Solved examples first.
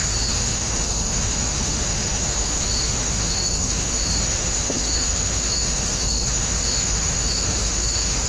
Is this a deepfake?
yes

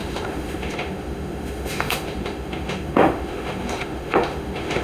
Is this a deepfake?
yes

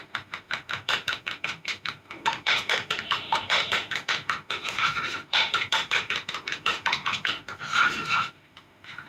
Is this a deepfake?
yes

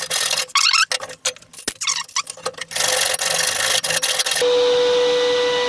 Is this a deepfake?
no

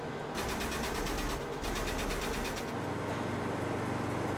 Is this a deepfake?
no